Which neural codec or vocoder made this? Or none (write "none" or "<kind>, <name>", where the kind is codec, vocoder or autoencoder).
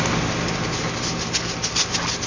none